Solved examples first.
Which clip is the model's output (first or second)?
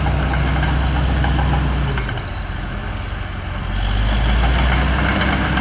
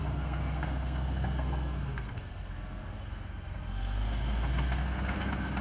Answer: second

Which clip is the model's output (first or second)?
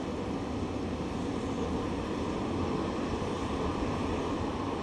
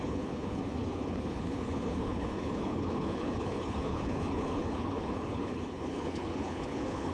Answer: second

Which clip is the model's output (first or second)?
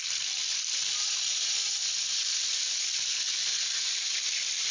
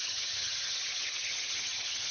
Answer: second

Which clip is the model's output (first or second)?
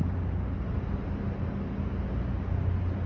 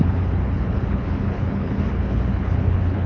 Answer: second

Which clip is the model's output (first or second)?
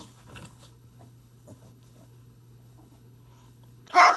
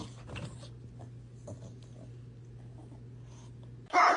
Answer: first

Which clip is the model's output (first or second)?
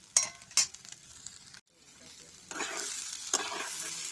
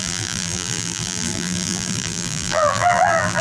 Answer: second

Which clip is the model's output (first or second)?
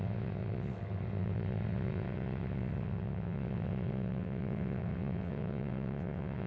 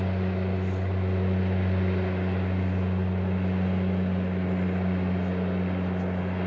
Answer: first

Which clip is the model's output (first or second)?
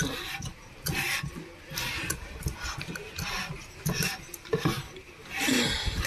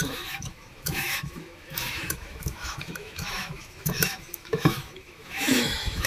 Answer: second